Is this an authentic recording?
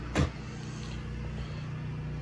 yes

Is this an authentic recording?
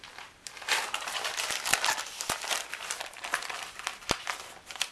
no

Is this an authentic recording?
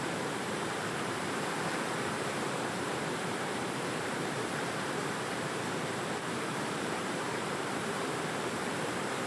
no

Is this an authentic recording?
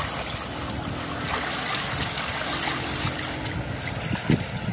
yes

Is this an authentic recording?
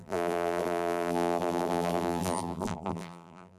no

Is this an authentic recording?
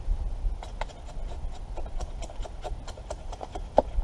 yes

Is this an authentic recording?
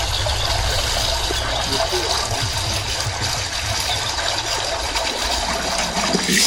yes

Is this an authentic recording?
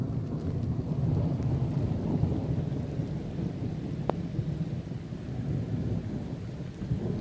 yes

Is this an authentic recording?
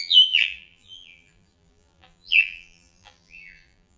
no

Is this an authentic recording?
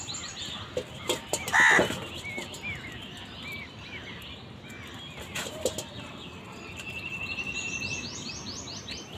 yes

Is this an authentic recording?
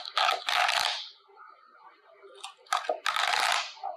yes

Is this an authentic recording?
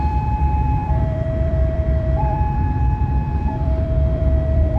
no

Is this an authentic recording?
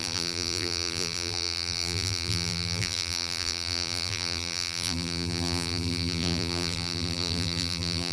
no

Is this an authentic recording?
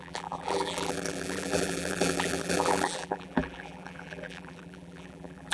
no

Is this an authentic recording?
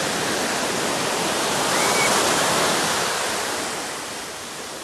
yes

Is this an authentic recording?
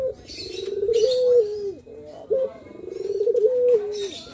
no